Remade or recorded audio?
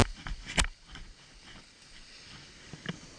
recorded